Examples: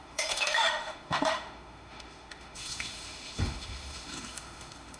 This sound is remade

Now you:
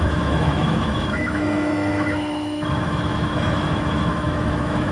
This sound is remade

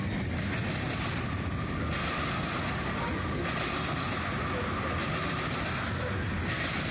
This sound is recorded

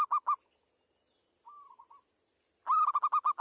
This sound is recorded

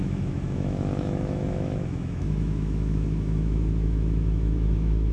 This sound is remade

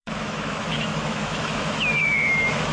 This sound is remade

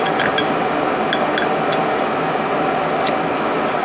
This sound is recorded